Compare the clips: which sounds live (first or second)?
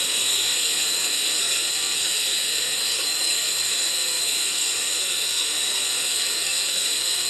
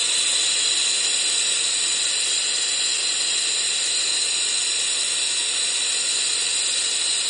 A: second